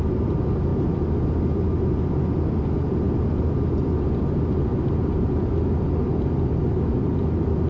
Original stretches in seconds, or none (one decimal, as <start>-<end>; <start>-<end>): 0.0-4.7; 5.3-7.7